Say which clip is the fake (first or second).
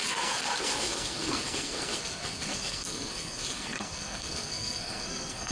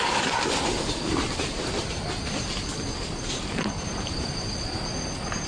first